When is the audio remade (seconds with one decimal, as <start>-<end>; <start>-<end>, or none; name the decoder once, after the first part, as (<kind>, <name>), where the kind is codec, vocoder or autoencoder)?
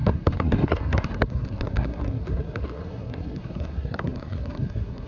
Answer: 0.0-5.1 (codec, SNAC)